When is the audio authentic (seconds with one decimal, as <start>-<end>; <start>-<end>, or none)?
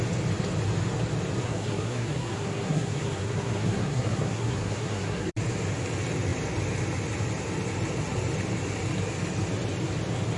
0.0-1.4; 5.3-10.4